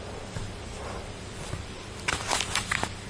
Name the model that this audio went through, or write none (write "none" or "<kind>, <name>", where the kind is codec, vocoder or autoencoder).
vocoder, BigVGAN v2